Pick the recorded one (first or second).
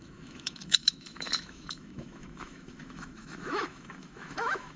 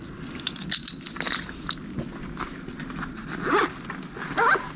second